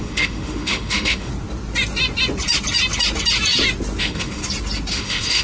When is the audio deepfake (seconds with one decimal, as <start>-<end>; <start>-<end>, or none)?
0.0-1.3; 4.0-4.4; 4.9-5.4